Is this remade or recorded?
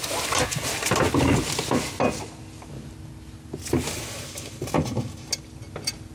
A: recorded